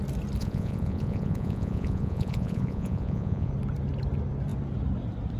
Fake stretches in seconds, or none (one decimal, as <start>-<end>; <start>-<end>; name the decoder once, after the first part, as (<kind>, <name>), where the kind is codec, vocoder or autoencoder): 0.4-3.5 (vocoder, Vocos)